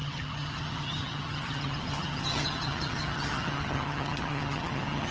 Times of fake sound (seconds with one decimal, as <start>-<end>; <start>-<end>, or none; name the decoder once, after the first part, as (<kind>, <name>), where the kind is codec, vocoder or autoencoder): 0.0-5.1 (vocoder, HiFi-GAN)